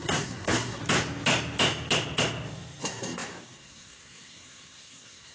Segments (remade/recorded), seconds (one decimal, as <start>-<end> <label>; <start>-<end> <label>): 0.0-0.8 remade; 0.8-2.8 recorded; 2.8-5.3 remade